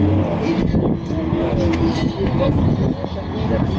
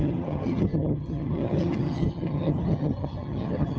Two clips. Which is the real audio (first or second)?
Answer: first